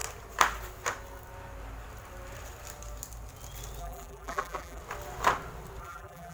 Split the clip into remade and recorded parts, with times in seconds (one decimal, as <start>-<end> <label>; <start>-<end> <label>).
0.0-3.8 recorded; 3.8-4.8 remade; 4.8-5.8 recorded; 5.8-6.3 remade